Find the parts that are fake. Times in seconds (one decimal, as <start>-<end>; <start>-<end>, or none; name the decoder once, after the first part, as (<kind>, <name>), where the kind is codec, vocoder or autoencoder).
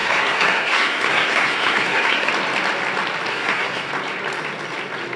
0.0-2.3 (codec, SNAC); 3.3-3.9